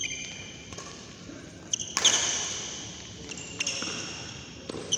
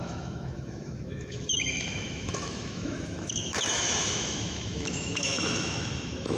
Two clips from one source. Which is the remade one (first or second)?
second